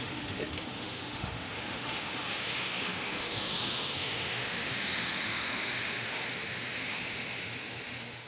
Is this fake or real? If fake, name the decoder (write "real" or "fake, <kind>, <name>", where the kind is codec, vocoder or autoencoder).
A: fake, autoencoder, DAC-VAE